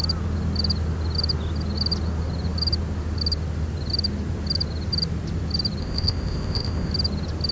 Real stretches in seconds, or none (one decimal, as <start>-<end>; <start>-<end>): 0.0-5.8; 6.9-7.5

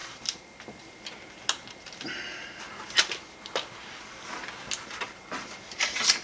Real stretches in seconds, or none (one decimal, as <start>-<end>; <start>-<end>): 0.6-6.2

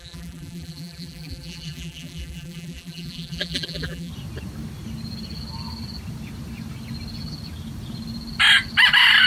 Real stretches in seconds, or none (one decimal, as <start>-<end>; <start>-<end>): 4.1-9.3